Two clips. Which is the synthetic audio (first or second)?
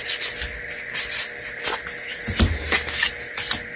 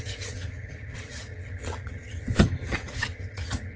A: second